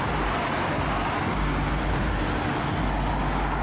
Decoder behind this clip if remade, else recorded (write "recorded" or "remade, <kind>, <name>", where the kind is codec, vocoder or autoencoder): recorded